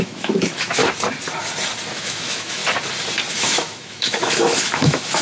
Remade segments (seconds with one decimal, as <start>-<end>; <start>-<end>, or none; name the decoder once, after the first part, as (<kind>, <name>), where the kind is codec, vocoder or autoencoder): 0.0-0.8 (autoencoder, DAC-VAE); 1.9-2.6; 3.3-5.2